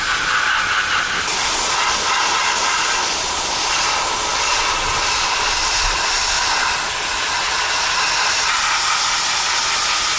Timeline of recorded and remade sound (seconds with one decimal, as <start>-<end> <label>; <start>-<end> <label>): 0.0-10.2 recorded